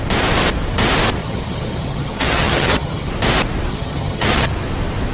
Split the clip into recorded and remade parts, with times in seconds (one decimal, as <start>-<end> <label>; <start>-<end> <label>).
0.0-1.2 recorded; 1.2-3.1 remade; 3.1-3.7 recorded; 3.7-4.5 remade; 4.5-5.1 recorded